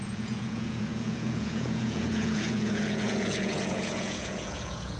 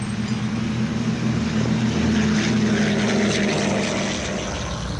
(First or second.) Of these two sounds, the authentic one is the second